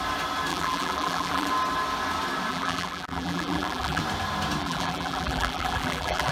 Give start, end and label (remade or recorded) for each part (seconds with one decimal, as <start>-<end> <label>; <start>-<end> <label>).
0.0-0.5 recorded; 0.5-1.5 remade; 1.5-2.5 recorded; 2.5-4.0 remade; 4.0-4.6 recorded; 4.6-6.3 remade